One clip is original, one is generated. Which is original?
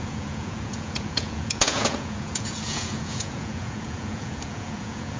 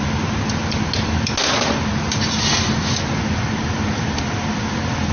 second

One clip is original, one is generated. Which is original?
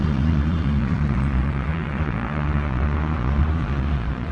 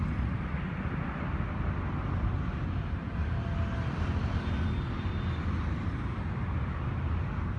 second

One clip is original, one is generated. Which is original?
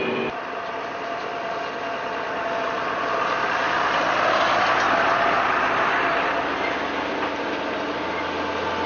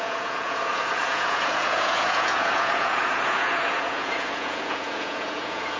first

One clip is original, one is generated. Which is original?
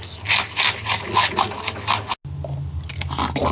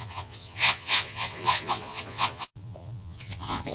first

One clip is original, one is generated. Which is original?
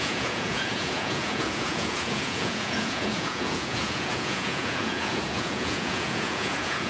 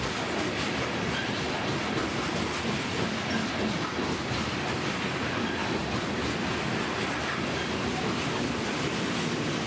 second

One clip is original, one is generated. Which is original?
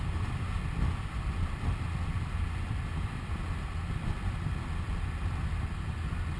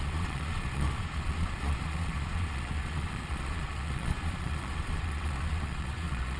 first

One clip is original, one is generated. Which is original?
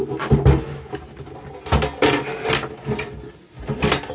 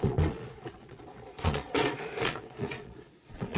first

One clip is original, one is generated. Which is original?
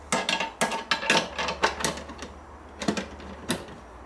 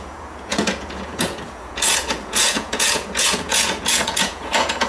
first